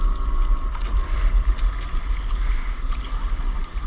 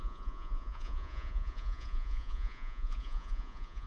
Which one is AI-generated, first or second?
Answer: second